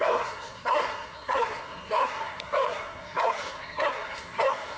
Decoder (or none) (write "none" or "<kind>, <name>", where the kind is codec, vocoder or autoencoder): codec, SNAC